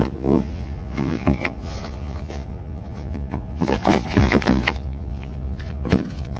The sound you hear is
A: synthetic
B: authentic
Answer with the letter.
A